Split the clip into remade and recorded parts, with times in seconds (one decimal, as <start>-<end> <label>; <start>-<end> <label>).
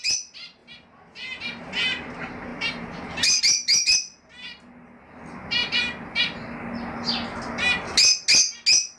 0.0-9.0 recorded